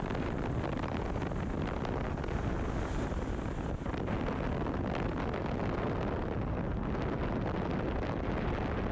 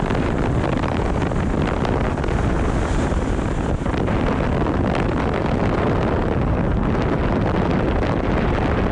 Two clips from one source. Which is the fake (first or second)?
second